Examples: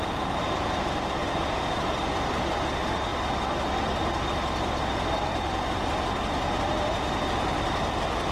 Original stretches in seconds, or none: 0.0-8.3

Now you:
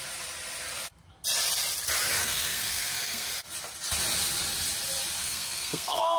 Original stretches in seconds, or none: 0.0-2.2; 3.3-5.2

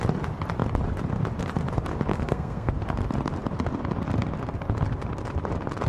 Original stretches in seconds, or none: 0.0-2.1; 2.7-5.9

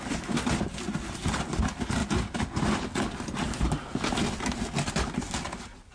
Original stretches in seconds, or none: 0.0-5.9

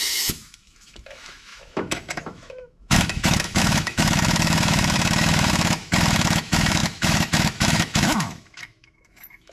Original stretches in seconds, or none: none

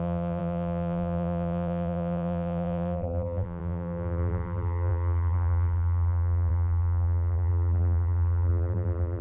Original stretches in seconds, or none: none

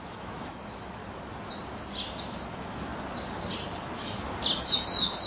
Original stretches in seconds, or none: 1.0-2.2; 2.9-4.6

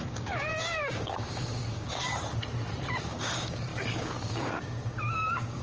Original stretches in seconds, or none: 2.1-3.0